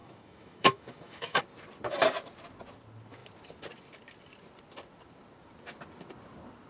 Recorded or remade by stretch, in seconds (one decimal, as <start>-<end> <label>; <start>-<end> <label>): 0.0-1.4 remade; 1.4-6.7 recorded